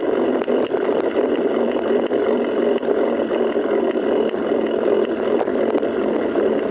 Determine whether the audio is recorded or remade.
remade